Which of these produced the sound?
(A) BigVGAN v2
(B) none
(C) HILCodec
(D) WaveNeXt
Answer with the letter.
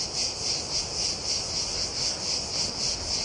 B